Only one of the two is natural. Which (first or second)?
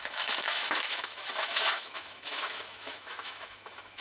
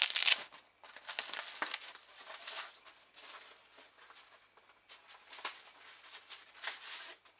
second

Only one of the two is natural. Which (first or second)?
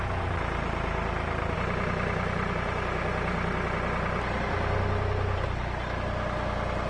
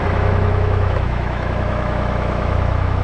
first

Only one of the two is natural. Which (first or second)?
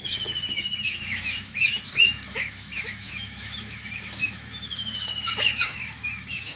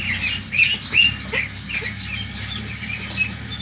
second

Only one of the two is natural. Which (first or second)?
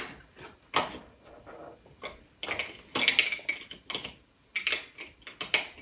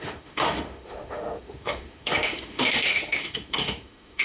first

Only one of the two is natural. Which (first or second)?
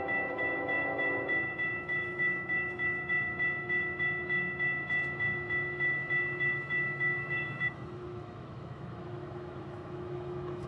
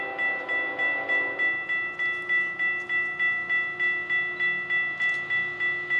second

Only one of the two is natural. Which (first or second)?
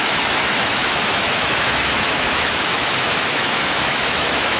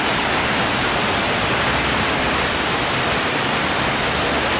second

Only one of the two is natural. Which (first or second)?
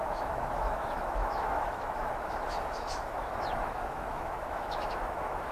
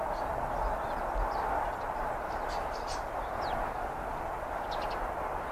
second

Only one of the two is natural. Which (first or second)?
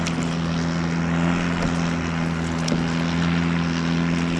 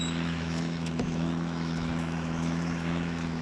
first